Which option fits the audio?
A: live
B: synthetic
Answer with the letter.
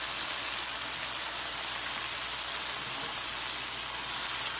A